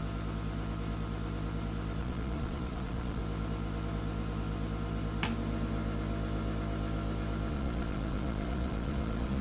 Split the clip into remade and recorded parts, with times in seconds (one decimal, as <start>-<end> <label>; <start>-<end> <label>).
0.0-2.0 recorded; 2.0-3.2 remade; 3.2-7.5 recorded; 7.5-9.4 remade